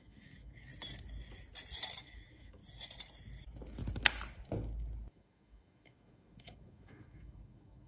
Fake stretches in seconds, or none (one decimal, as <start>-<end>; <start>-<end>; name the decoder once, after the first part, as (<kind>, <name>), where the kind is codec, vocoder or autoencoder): 0.0-0.7 (autoencoder, DAC-VAE); 2.0-2.6; 5.1-7.9